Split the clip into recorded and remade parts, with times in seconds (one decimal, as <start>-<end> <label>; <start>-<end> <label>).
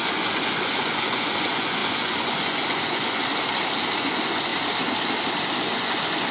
0.0-3.2 remade; 3.2-4.0 recorded; 4.0-4.5 remade; 4.5-5.5 recorded; 5.5-6.3 remade